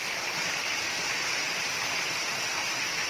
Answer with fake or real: fake